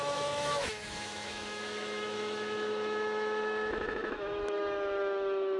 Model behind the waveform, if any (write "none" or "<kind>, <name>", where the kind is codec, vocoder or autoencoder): autoencoder, DAC-VAE